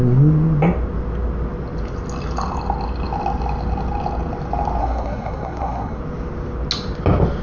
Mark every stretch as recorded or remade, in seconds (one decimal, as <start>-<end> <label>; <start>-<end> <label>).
0.0-4.8 recorded; 4.8-6.0 remade; 6.0-7.4 recorded